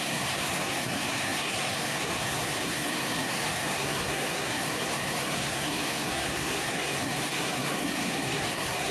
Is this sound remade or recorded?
remade